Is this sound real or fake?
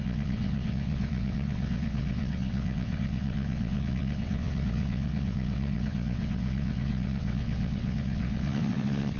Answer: fake